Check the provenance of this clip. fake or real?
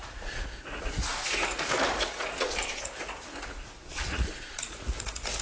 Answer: fake